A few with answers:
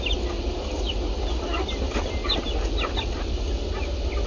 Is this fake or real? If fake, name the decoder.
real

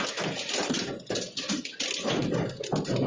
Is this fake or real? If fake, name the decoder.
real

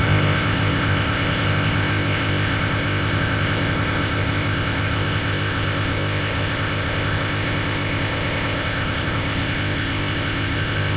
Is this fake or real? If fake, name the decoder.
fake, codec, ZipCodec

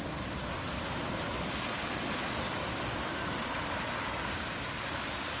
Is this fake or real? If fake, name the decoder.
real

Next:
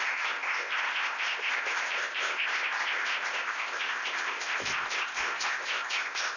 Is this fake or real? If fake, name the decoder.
fake, codec, ZipCodec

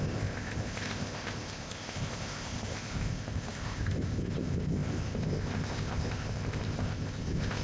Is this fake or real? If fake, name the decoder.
fake, codec, ZipCodec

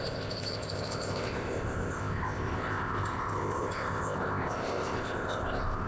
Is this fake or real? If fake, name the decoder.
fake, codec, ZipCodec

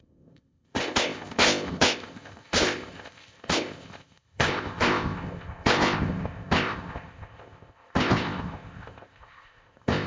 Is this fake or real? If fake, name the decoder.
fake, codec, ZipCodec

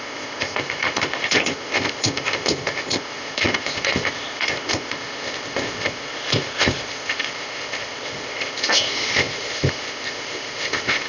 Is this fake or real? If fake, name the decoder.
fake, codec, ZipCodec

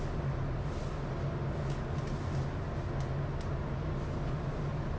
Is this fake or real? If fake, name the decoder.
real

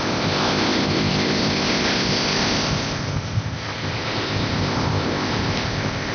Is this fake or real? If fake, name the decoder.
fake, codec, ZipCodec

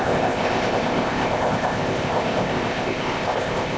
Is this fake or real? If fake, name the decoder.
fake, codec, ZipCodec